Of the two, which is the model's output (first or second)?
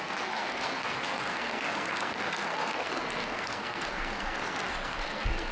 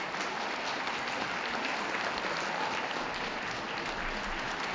first